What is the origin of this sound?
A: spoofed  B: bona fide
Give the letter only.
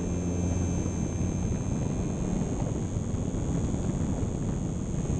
B